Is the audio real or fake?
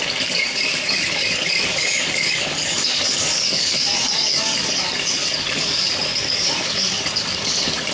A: fake